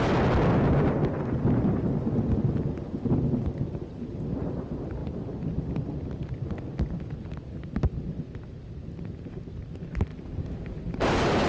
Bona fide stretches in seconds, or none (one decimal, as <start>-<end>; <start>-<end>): 0.0-10.1; 11.1-11.5